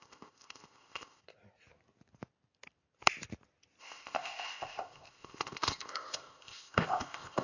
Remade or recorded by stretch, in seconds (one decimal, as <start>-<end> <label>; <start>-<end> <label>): 0.0-1.2 remade; 1.2-3.8 recorded; 3.8-7.4 remade